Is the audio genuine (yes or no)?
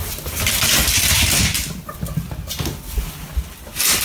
yes